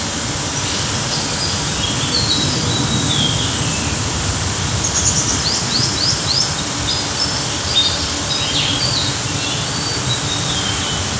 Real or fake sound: real